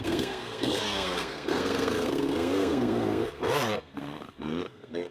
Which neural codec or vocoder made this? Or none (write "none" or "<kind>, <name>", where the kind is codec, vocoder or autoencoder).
codec, SNAC